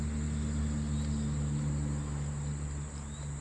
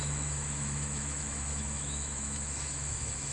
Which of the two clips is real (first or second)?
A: first